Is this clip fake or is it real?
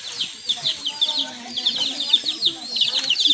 real